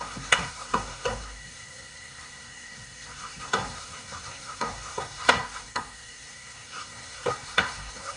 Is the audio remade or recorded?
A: remade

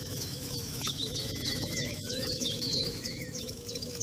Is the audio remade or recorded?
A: remade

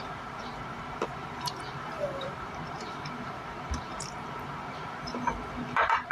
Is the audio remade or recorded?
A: remade